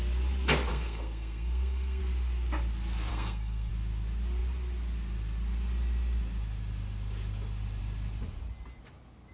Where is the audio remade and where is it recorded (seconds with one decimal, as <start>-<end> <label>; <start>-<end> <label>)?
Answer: 0.0-0.7 recorded; 0.7-2.0 remade; 2.0-3.1 recorded; 3.1-3.7 remade; 3.7-9.3 recorded